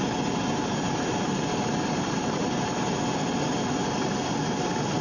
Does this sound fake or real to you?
real